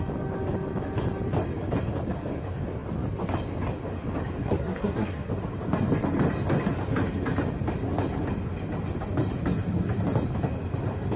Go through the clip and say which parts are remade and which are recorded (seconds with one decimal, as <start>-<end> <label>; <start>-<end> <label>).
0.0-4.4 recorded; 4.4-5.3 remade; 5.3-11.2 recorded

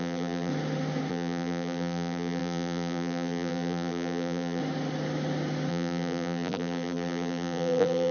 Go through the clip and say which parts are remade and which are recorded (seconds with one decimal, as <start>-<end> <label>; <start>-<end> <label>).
0.0-0.5 remade; 0.5-1.1 recorded; 1.1-4.6 remade; 4.6-5.7 recorded; 5.7-8.1 remade

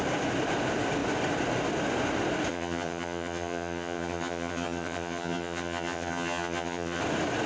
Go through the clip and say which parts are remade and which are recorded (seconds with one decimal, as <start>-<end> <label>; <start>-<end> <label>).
0.0-2.5 recorded; 2.5-7.0 remade; 7.0-7.5 recorded

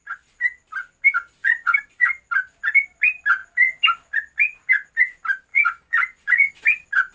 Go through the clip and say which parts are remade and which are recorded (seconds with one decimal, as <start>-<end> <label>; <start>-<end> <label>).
0.0-1.4 recorded; 1.4-2.1 remade; 2.1-5.5 recorded; 5.5-6.5 remade; 6.5-7.1 recorded